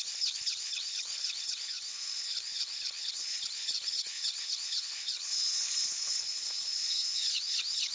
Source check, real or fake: fake